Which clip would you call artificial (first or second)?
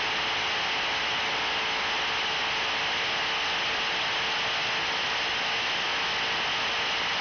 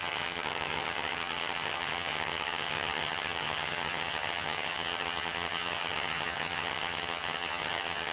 second